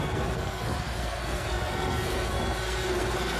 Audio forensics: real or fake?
fake